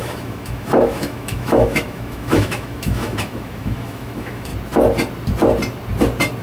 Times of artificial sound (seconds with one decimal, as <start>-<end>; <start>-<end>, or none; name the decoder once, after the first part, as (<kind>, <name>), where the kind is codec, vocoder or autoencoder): 0.0-4.5 (autoencoder, DAC-VAE)